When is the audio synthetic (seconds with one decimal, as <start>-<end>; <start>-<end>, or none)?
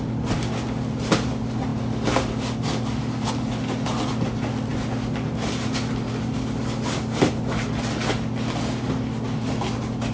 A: none